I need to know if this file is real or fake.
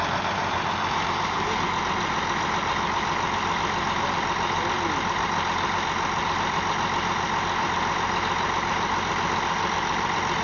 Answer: real